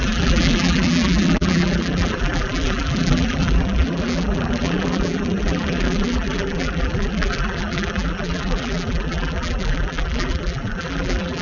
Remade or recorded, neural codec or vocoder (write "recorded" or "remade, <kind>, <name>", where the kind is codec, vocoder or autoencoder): remade, vocoder, BigVGAN v2